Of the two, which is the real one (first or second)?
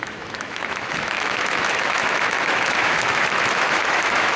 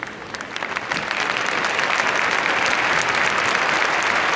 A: second